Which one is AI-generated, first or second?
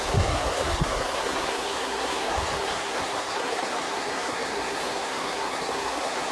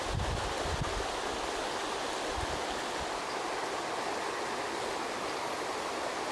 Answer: first